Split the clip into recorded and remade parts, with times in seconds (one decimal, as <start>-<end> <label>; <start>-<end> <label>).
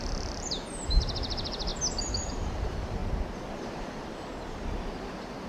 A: 0.0-1.7 remade; 1.7-2.3 recorded; 2.3-3.0 remade; 3.0-3.6 recorded; 3.6-4.3 remade; 4.3-4.9 recorded; 4.9-5.5 remade